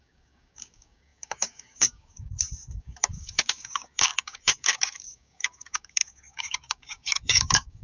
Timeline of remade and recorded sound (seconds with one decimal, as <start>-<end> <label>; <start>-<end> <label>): 0.0-7.8 remade